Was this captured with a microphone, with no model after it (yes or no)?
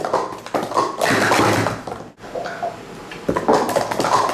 yes